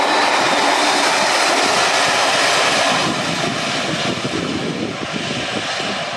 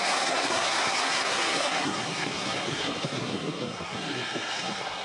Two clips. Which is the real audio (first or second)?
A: first